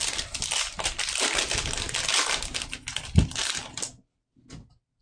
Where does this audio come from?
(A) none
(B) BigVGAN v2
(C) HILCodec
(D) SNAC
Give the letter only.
A